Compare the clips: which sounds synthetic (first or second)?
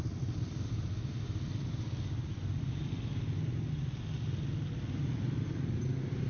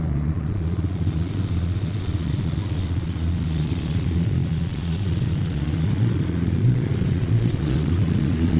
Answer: second